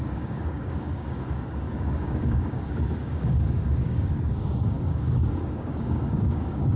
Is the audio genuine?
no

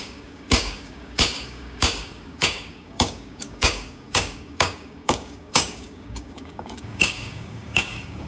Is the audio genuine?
no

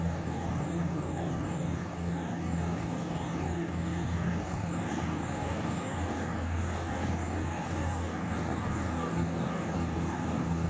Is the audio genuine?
no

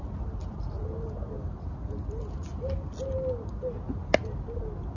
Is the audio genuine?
yes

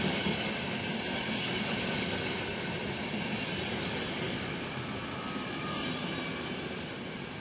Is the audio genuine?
yes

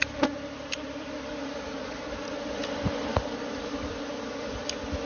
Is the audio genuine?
yes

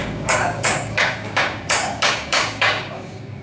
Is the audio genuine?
no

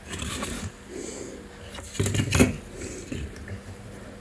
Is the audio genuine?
yes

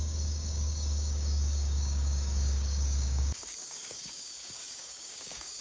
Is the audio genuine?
no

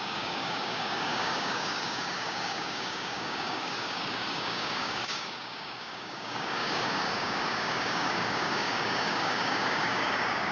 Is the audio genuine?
no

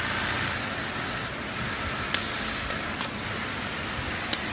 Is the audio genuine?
yes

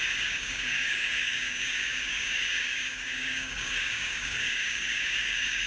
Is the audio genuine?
no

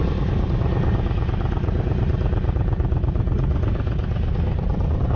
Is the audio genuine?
yes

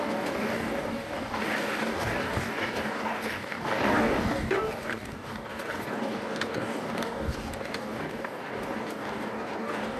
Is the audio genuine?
no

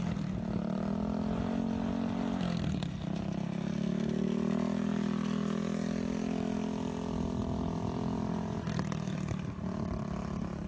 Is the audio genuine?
yes